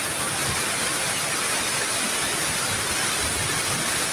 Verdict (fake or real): real